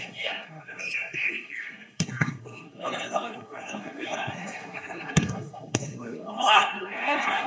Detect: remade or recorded remade